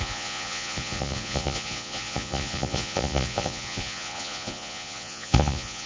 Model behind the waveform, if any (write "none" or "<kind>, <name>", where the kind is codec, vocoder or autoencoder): vocoder, Vocos